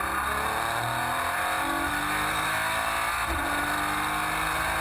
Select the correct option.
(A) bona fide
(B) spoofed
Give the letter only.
A